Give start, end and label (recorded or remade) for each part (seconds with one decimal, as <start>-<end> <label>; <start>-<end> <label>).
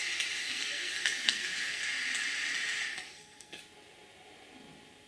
0.0-0.4 recorded; 0.4-1.8 remade; 1.8-2.9 recorded; 2.9-3.6 remade; 3.6-5.1 recorded